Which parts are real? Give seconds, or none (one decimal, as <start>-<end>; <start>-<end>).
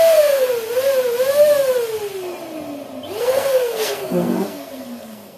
0.5-3.2